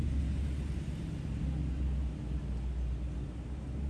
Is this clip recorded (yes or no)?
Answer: yes